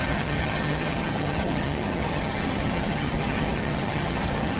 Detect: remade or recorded remade